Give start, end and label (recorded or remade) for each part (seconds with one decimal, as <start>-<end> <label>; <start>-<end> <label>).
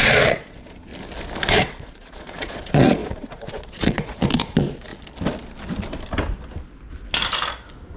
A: 0.0-0.9 remade; 0.9-1.5 recorded; 1.5-4.9 remade; 4.9-8.0 recorded